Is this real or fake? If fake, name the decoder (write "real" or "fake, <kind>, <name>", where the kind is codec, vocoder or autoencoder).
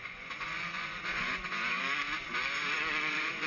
fake, vocoder, Vocos